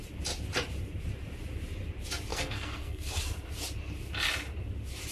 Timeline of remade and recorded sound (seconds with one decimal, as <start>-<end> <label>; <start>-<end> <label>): 0.0-2.3 recorded; 2.3-3.2 remade; 3.2-5.1 recorded